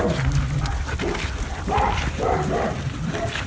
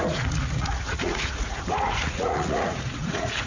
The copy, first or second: second